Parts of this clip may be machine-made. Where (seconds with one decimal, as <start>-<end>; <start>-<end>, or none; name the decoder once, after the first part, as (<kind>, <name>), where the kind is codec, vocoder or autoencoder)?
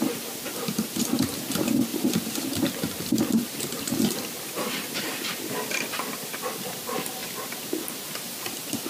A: 1.9-4.5 (vocoder, BigVGAN v2); 5.3-6.3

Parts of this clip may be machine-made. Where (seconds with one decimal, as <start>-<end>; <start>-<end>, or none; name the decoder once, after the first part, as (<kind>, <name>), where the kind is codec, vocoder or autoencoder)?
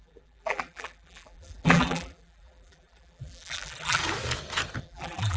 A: 0.0-4.0 (vocoder, BigVGAN v2); 4.8-5.4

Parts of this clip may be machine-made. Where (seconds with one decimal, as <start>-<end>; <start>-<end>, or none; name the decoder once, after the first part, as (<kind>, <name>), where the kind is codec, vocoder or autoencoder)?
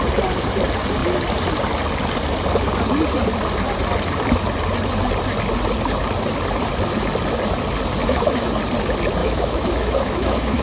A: 8.0-8.5 (autoencoder, DAC-VAE); 9.2-10.6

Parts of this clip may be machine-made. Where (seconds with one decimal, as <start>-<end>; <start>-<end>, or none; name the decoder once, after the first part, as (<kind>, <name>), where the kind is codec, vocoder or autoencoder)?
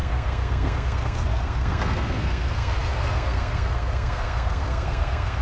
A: 0.0-5.4 (codec, SNAC)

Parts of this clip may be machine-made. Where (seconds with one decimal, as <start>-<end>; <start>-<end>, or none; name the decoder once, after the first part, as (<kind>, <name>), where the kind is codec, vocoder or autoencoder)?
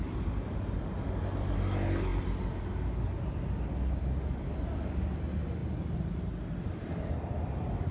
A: none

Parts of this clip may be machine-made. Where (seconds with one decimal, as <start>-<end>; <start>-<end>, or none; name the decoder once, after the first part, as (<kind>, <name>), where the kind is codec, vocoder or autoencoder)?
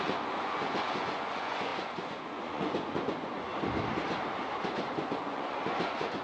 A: 0.0-3.5 (vocoder, Vocos); 4.9-6.2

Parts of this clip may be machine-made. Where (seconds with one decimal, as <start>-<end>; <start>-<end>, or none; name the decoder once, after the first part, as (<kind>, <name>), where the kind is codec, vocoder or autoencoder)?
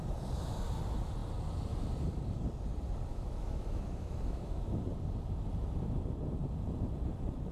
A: 3.1-4.7 (autoencoder, DAC-VAE)